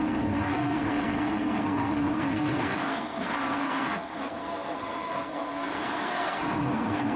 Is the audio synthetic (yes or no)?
yes